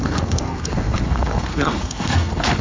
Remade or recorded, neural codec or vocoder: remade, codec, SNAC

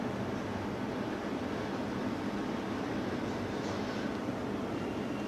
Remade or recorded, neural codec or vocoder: recorded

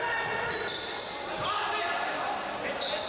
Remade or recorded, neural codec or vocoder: recorded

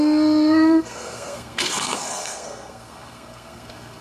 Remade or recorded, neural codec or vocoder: remade, codec, SNAC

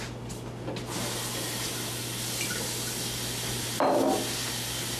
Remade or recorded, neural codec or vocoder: recorded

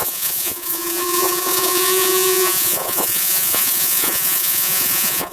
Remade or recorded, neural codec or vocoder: remade, vocoder, Vocos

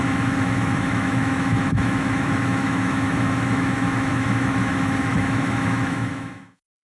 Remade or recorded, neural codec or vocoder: remade, autoencoder, DAC-VAE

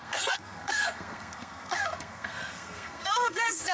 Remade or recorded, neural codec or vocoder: remade, codec, SNAC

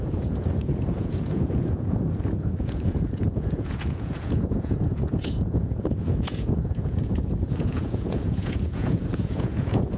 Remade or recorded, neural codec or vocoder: remade, vocoder, Vocos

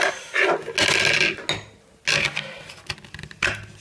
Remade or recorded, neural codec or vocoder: recorded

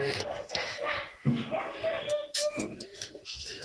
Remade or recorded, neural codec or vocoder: remade, autoencoder, DAC-VAE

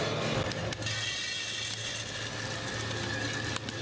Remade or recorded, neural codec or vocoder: recorded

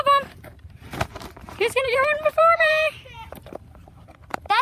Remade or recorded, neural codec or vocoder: remade, vocoder, BigVGAN v2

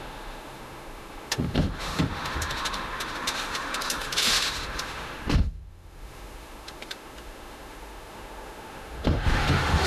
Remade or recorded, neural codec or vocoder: remade, autoencoder, DAC-VAE